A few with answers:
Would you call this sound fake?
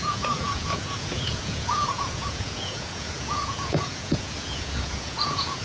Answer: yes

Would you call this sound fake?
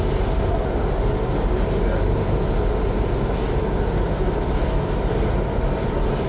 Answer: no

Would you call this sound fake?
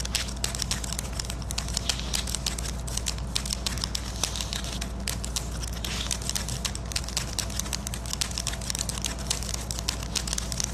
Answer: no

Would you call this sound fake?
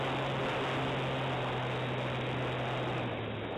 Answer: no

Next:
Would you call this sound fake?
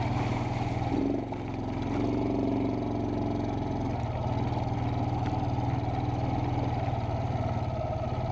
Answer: no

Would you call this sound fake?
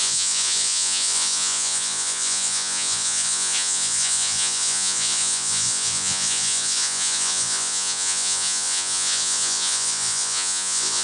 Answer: yes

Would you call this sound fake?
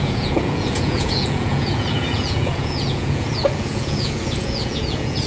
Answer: yes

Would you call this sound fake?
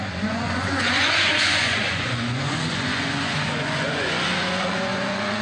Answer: yes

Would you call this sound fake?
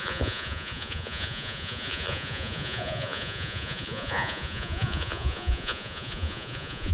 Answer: yes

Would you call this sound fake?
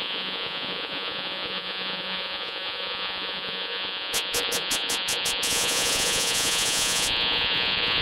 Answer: yes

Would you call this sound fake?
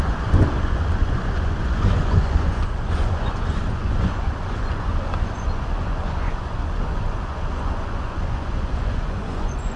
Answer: yes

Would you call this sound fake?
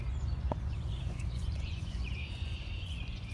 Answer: yes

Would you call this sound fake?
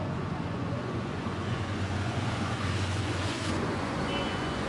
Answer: yes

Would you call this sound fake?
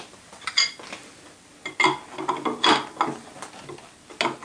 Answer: no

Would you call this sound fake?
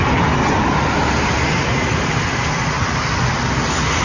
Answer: no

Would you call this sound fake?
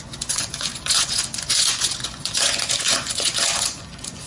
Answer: yes